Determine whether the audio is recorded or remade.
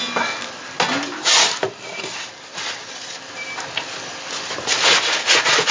recorded